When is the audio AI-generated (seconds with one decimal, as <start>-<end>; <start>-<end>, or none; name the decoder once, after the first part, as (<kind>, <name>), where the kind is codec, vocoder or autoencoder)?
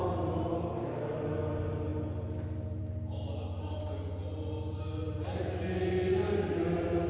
none